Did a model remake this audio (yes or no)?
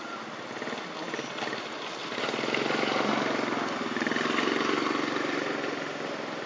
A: no